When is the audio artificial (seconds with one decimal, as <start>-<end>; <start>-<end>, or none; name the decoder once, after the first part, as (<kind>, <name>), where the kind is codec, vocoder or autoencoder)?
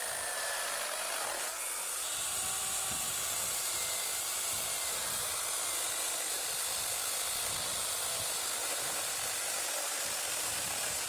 8.6-9.7 (vocoder, BigVGAN v2)